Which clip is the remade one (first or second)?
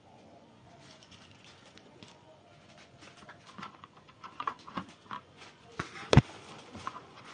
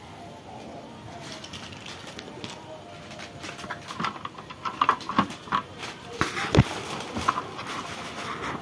first